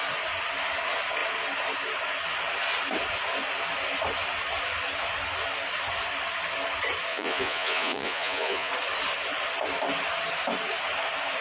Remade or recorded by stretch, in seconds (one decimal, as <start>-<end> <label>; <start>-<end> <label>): 0.0-7.1 recorded; 7.1-8.7 remade; 8.7-11.4 recorded